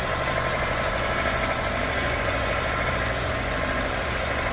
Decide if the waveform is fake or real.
fake